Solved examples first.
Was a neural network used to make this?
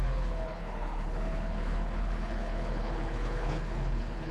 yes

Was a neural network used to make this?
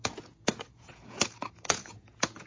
yes